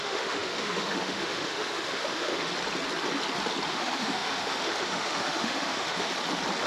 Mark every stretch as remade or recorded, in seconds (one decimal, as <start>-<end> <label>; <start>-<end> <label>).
0.0-2.5 remade; 2.5-3.7 recorded; 3.7-6.1 remade; 6.1-6.7 recorded

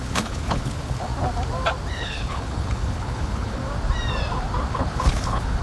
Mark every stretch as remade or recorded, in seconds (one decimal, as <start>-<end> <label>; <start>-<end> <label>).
0.0-1.1 remade; 1.1-1.9 recorded; 1.9-3.6 remade; 3.6-4.7 recorded; 4.7-5.6 remade